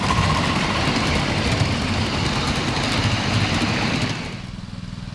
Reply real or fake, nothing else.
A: real